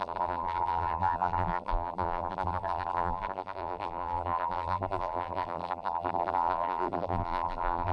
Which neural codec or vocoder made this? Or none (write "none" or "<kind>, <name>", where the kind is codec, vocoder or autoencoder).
vocoder, BigVGAN v2